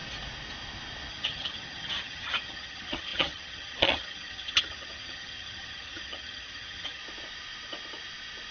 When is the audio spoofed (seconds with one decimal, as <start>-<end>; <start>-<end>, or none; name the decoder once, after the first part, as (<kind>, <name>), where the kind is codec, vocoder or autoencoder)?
1.1-7.0 (vocoder, HiFi-GAN)